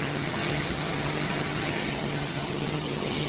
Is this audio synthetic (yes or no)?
yes